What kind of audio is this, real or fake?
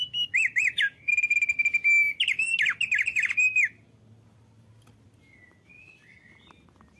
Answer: real